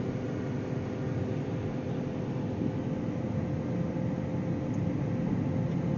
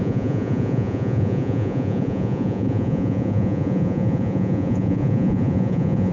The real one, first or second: first